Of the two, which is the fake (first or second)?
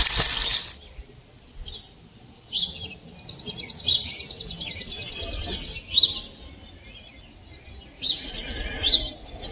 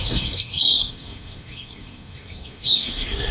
second